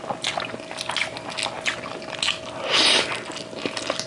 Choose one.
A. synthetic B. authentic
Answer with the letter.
B